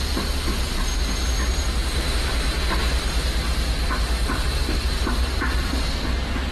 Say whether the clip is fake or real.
fake